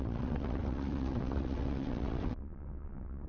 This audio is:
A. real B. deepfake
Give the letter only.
B